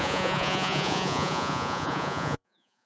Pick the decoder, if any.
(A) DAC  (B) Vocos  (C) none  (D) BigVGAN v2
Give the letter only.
B